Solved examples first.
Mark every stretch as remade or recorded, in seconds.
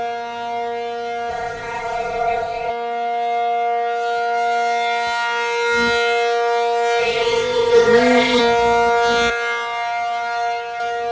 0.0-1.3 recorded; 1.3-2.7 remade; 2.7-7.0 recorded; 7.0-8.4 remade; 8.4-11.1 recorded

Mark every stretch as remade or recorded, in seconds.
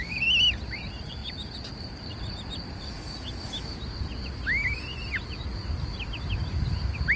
0.0-1.2 recorded; 1.2-2.1 remade; 2.1-7.2 recorded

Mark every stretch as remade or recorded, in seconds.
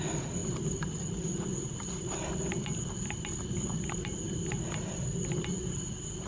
0.0-6.3 recorded